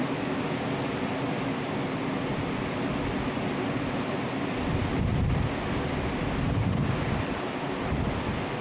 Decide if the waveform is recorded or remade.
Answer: recorded